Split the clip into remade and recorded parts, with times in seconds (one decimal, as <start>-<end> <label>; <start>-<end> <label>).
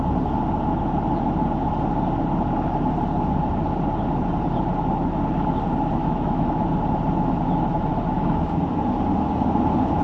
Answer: 0.0-6.0 recorded; 6.0-6.6 remade; 6.6-7.9 recorded; 7.9-8.5 remade; 8.5-10.0 recorded